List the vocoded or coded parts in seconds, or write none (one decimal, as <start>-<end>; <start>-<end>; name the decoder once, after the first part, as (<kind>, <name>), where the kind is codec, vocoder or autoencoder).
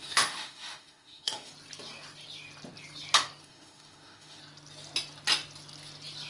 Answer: 0.0-1.5 (autoencoder, DAC-VAE); 3.4-4.4